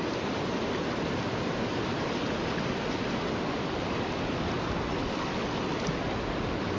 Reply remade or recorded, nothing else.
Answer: recorded